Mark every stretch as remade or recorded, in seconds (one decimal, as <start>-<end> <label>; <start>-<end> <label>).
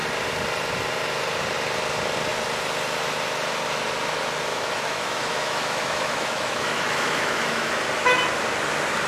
0.0-4.5 recorded; 4.5-7.8 remade; 7.8-9.1 recorded